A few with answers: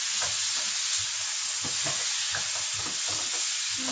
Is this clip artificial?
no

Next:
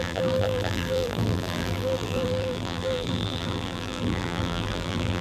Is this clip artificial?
yes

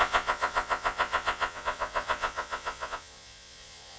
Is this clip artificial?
yes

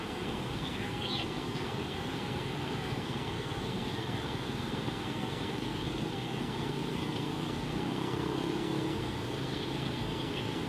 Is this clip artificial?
yes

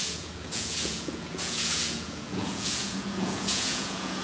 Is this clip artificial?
yes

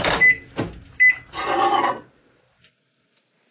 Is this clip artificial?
no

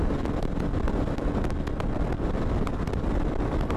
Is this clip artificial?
no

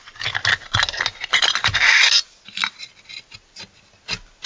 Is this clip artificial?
no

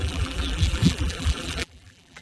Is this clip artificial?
yes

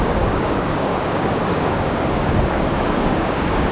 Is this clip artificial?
yes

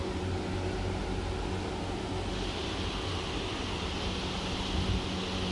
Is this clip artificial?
no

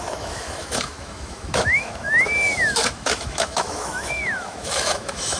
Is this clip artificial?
yes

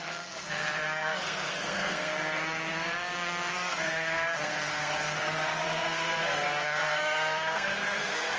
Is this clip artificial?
yes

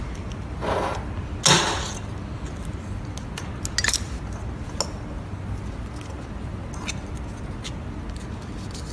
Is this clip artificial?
no